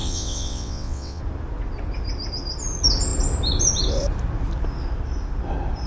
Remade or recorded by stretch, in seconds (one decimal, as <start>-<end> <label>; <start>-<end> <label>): 0.0-1.2 remade; 1.2-5.9 recorded